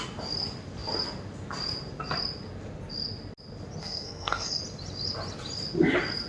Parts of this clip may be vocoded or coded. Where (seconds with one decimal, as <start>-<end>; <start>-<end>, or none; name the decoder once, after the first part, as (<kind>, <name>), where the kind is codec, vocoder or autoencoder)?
3.8-4.6 (codec, SNAC)